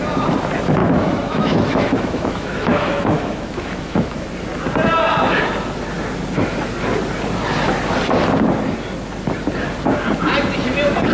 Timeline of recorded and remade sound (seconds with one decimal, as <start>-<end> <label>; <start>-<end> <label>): 0.0-0.8 recorded; 0.8-4.3 remade; 4.3-11.1 recorded